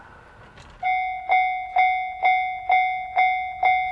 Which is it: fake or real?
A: real